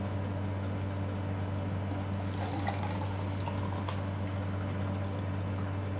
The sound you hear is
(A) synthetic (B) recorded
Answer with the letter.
B